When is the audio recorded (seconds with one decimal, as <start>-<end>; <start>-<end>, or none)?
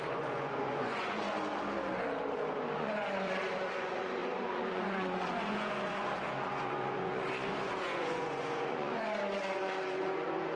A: 1.4-2.8